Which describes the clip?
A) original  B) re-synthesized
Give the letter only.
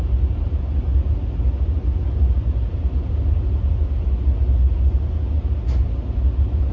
A